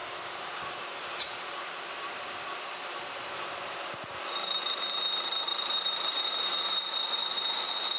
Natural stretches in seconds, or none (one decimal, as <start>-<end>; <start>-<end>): 4.8-5.5; 6.1-8.0